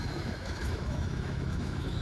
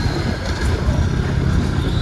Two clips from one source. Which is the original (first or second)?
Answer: second